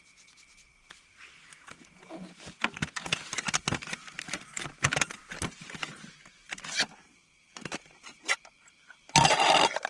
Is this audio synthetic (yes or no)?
no